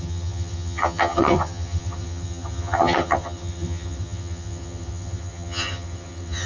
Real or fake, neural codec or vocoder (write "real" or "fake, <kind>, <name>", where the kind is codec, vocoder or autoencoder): fake, vocoder, HiFi-GAN